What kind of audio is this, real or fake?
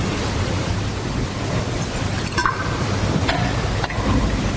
real